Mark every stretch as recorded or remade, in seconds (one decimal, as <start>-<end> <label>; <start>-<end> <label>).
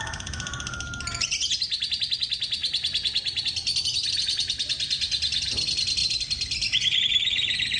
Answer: 0.0-7.8 recorded